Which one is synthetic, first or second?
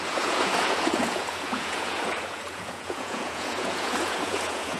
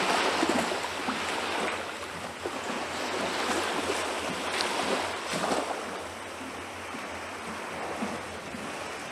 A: first